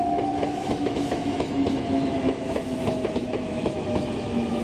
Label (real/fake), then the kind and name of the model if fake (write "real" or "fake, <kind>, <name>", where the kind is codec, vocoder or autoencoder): fake, autoencoder, DAC-VAE